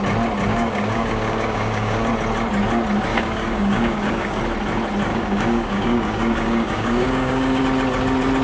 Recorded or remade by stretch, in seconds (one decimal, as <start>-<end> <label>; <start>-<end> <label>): 0.0-0.5 recorded; 0.5-2.1 remade; 2.1-3.1 recorded; 3.1-4.4 remade; 4.4-5.1 recorded; 5.1-7.6 remade; 7.6-8.4 recorded